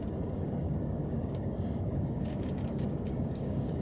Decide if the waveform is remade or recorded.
remade